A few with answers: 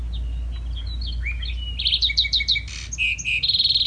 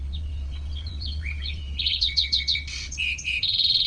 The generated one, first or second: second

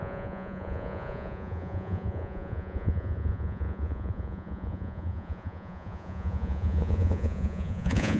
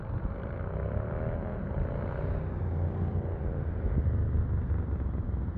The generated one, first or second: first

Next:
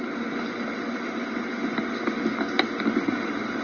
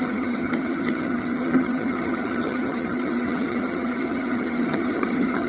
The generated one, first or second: second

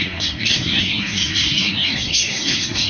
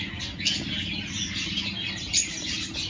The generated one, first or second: first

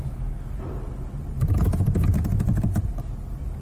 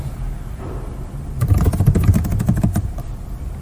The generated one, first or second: second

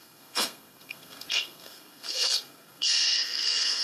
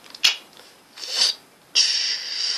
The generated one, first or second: first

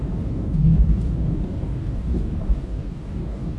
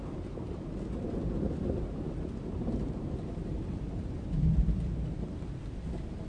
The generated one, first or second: first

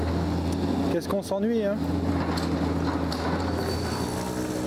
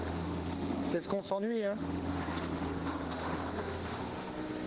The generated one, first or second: second